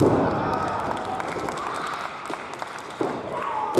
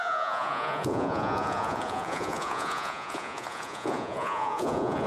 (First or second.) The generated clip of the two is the second